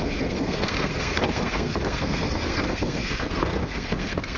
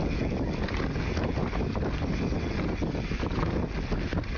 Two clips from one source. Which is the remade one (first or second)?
first